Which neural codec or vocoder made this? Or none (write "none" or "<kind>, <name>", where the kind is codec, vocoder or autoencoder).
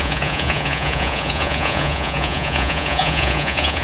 vocoder, Vocos